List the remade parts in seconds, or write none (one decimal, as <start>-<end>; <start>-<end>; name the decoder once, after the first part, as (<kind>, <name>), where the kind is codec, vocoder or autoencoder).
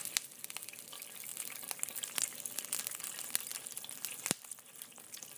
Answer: none